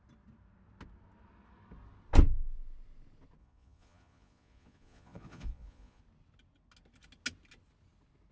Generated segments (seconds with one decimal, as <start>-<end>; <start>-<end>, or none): 3.4-6.0